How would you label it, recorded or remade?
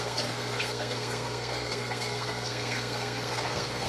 remade